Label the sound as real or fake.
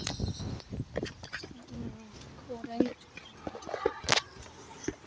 real